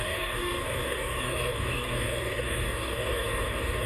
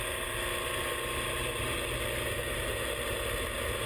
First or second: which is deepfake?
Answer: first